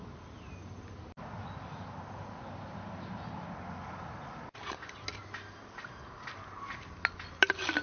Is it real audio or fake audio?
real